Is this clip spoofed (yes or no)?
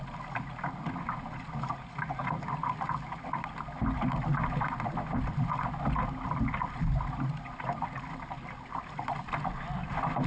no